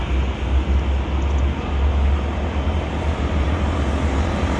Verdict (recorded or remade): recorded